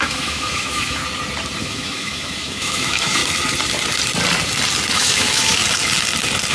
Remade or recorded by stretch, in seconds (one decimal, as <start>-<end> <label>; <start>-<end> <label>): 0.0-1.0 remade; 1.0-1.6 recorded; 1.6-3.2 remade; 3.2-4.9 recorded; 4.9-5.6 remade; 5.6-6.5 recorded